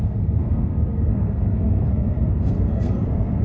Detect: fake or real fake